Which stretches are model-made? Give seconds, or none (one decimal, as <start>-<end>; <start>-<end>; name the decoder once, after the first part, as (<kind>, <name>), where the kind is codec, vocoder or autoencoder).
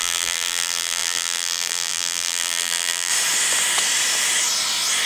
0.0-3.1 (vocoder, BigVGAN v2)